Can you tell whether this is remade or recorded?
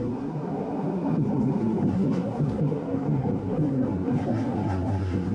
remade